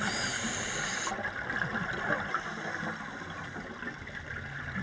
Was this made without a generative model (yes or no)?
yes